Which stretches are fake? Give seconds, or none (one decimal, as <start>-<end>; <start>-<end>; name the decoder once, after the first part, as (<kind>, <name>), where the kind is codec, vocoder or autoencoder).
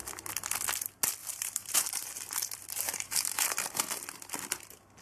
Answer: 1.2-3.8 (vocoder, BigVGAN v2)